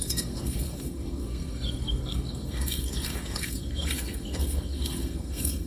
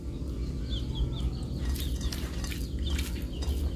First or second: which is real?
second